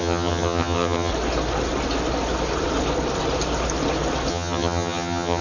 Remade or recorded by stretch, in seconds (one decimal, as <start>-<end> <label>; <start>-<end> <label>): 0.0-1.1 remade; 1.1-4.3 recorded; 4.3-5.4 remade